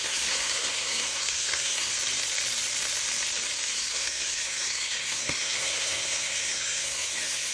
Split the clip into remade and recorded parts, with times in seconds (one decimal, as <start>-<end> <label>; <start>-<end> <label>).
0.0-1.9 remade; 1.9-3.7 recorded; 3.7-7.5 remade